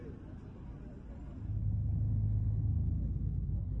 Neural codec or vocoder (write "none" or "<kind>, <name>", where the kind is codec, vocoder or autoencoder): none